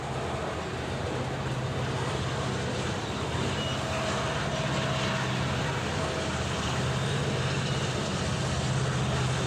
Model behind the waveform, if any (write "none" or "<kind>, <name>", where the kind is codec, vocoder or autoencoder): none